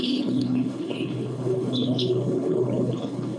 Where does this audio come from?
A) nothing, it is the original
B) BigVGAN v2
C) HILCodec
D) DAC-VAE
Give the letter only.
C